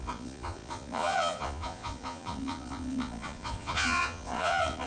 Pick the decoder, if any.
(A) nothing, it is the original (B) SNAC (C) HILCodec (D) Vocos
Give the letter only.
D